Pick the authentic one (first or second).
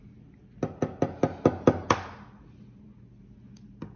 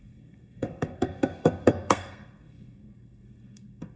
first